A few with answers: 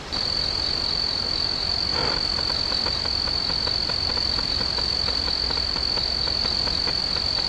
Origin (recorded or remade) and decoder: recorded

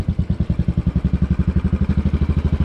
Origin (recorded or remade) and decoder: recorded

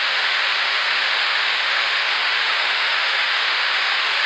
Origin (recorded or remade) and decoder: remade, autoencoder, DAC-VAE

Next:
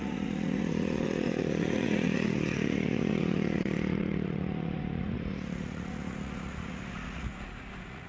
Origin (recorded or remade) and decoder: remade, vocoder, Vocos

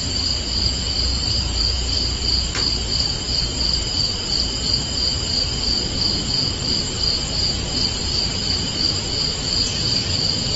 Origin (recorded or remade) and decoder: remade, vocoder, BigVGAN v2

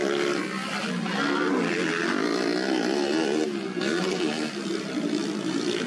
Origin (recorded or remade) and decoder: recorded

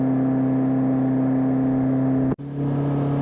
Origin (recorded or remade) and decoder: recorded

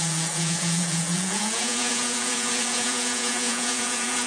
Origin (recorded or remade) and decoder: remade, vocoder, Vocos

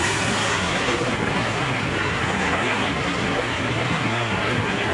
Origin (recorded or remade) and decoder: remade, codec, SNAC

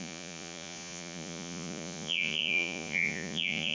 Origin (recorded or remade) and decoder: remade, vocoder, Vocos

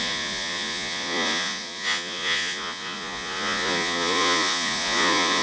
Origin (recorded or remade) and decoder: remade, vocoder, Vocos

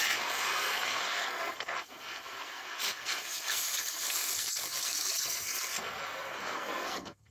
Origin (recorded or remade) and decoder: remade, codec, SNAC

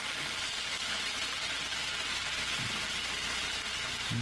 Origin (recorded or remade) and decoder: recorded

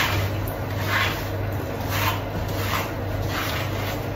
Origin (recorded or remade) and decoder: recorded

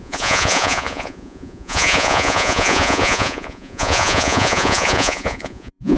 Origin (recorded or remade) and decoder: remade, vocoder, Vocos